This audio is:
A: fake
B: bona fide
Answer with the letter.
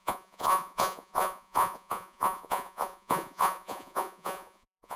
A